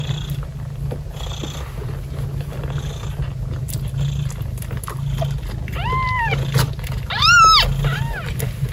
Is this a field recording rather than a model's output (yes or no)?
yes